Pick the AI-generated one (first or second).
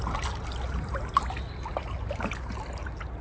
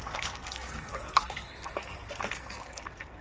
second